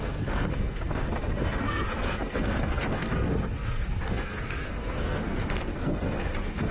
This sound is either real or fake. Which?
fake